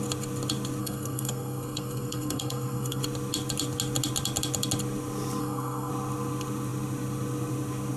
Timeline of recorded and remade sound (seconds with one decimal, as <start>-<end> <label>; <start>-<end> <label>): 0.0-0.8 recorded; 0.8-3.0 remade; 3.0-5.4 recorded; 5.4-5.9 remade; 5.9-8.0 recorded